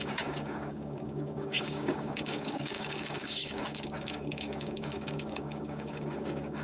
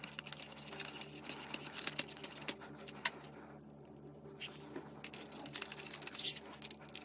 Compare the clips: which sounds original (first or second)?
second